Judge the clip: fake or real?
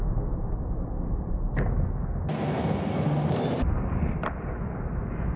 real